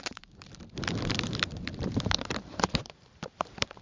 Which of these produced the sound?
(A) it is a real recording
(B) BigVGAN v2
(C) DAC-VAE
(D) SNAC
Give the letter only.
B